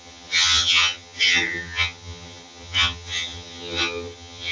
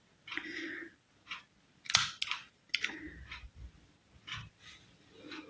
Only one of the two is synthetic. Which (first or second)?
first